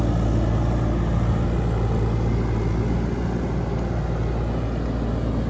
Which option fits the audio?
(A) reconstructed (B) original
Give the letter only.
B